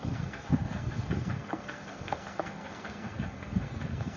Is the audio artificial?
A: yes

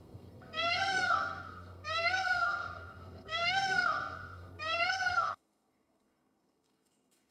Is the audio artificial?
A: yes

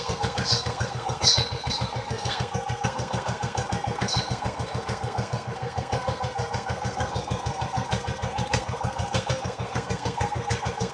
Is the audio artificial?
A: yes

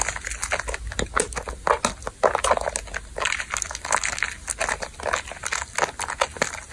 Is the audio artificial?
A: no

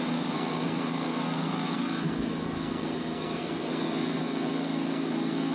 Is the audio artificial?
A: yes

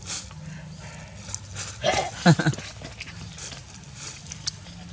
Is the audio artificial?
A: no